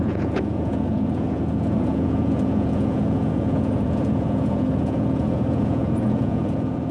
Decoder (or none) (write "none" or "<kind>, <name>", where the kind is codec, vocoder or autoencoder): vocoder, Vocos